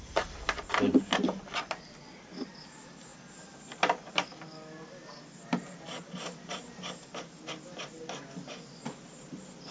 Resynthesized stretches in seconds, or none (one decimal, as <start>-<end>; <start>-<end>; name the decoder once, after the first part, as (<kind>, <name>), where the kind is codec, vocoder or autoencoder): none